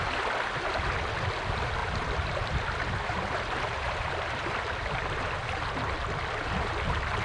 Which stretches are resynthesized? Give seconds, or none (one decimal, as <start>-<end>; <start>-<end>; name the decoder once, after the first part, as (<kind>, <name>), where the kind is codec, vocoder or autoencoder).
1.8-4.7 (vocoder, BigVGAN v2)